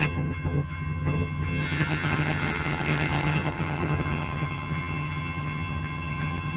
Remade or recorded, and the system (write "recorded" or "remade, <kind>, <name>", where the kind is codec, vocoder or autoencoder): remade, vocoder, HiFi-GAN